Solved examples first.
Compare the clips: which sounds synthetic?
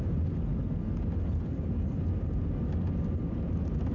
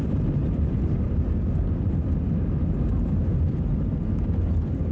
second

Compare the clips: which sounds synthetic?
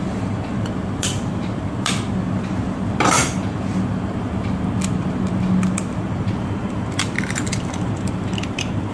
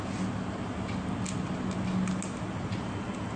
first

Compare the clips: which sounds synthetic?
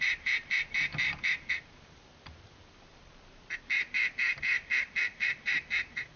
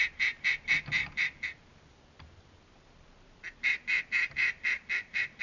first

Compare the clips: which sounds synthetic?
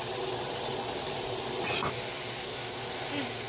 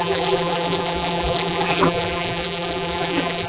second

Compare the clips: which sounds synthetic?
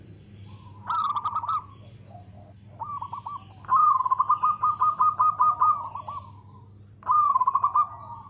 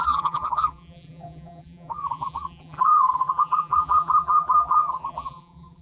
second